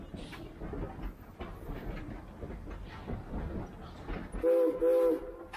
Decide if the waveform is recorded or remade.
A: recorded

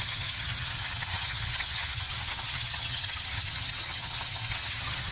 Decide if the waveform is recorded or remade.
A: remade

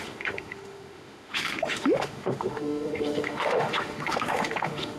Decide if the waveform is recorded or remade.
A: remade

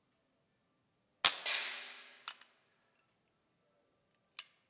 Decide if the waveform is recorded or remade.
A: recorded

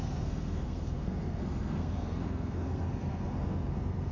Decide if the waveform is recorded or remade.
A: remade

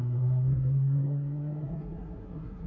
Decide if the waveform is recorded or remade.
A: remade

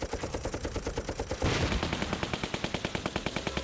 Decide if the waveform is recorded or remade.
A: recorded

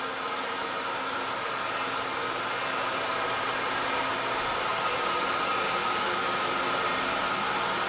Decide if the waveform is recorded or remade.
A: recorded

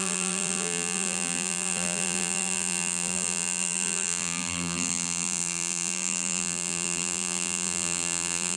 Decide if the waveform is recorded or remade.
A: remade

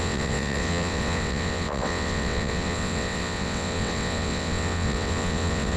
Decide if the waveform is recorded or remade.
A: remade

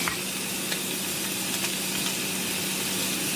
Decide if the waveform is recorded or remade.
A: recorded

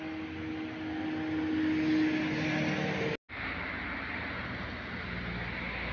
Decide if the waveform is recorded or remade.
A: recorded